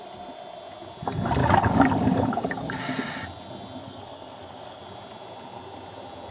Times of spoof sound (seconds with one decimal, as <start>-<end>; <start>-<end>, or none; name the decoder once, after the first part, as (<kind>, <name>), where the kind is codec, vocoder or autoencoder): 1.4-2.8 (codec, DAC); 3.8-4.8

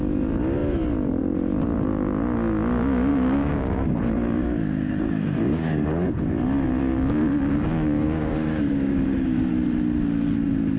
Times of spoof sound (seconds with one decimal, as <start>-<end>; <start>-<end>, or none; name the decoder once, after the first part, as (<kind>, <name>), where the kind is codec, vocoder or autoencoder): 3.1-6.2 (codec, DAC); 6.8-9.5

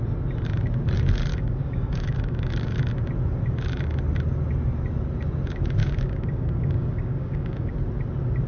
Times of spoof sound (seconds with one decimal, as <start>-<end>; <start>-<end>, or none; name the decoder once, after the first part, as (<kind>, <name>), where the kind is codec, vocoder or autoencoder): 1.3-2.9 (codec, DAC); 5.8-7.7

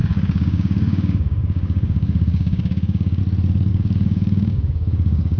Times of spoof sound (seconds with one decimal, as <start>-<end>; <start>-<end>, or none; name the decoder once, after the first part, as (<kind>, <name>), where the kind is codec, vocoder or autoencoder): 0.0-3.2 (codec, DAC); 3.7-5.4

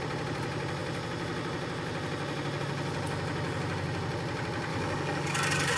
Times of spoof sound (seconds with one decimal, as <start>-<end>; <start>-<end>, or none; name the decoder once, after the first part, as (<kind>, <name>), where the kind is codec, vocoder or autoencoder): 4.7-5.8 (codec, DAC)

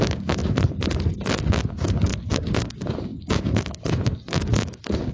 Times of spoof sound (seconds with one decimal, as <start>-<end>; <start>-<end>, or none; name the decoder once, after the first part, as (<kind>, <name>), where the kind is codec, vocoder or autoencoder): 0.0-0.4 (codec, DAC); 1.4-5.1

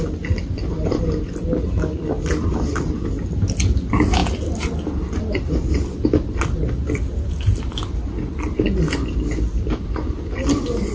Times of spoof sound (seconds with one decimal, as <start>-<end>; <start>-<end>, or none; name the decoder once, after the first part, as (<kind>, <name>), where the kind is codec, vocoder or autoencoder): none

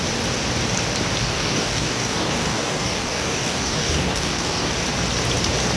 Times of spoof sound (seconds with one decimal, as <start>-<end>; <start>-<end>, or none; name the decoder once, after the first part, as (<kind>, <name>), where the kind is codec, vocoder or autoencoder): 1.2-4.7 (codec, DAC)